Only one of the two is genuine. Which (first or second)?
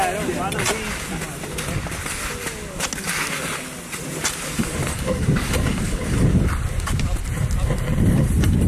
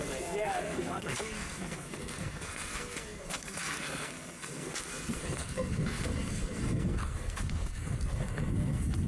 first